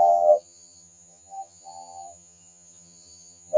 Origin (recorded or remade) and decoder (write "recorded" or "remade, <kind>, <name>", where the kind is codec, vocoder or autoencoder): remade, vocoder, HiFi-GAN